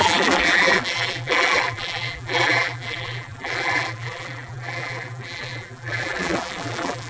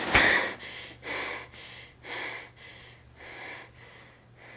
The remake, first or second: first